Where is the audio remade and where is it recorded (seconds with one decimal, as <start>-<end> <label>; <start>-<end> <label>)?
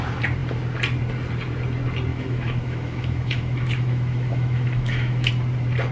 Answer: 0.0-2.1 recorded; 2.1-5.3 remade; 5.3-5.9 recorded